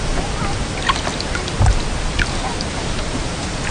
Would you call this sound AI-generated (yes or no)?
no